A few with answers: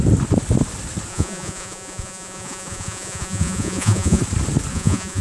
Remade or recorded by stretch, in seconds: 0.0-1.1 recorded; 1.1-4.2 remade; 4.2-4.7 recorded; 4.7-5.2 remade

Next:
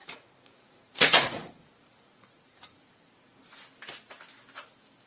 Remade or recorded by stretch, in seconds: 0.0-3.0 remade; 3.0-5.1 recorded

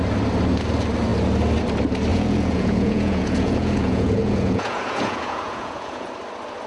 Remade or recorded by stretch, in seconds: 0.0-2.1 recorded; 2.1-6.1 remade; 6.1-6.7 recorded

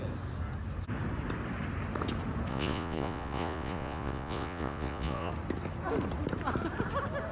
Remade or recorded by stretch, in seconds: 0.0-2.5 recorded; 2.5-5.3 remade; 5.3-7.3 recorded

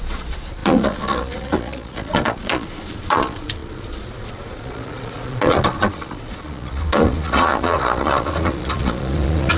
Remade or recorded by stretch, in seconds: 0.0-9.6 remade

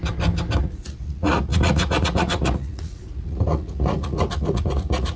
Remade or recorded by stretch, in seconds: 0.0-0.6 recorded; 0.6-5.2 remade

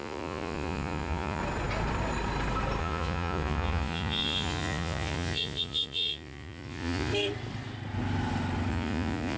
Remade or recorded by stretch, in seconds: 0.0-1.4 remade; 1.4-2.8 recorded; 2.8-7.1 remade; 7.1-8.7 recorded; 8.7-9.4 remade

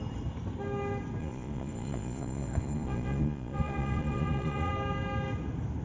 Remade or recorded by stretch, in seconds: 0.0-1.2 recorded; 1.2-4.7 remade; 4.7-5.8 recorded